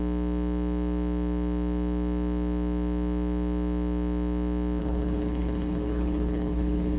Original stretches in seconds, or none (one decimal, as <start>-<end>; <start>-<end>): 0.0-4.8